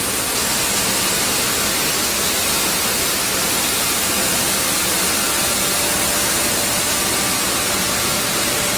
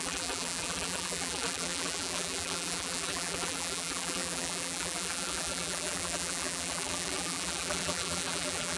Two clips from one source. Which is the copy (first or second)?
second